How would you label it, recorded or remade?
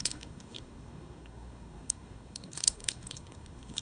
remade